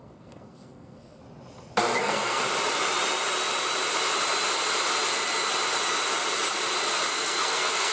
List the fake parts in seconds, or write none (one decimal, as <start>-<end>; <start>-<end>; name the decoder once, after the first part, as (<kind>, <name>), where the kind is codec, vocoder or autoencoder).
0.0-1.2 (codec, SNAC); 2.0-2.4; 7.1-7.9